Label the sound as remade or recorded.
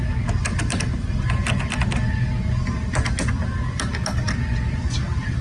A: recorded